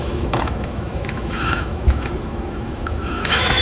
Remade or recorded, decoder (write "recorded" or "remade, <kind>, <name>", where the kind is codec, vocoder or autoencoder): remade, autoencoder, DAC-VAE